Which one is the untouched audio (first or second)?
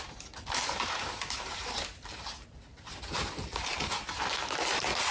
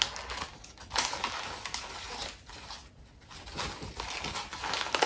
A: second